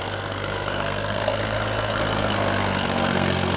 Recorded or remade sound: remade